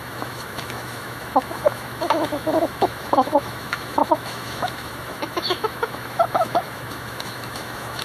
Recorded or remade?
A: remade